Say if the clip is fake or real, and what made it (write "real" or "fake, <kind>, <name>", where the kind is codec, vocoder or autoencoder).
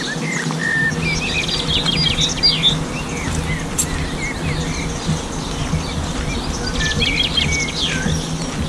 real